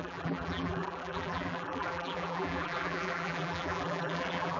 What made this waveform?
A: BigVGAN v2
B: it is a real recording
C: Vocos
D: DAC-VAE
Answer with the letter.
A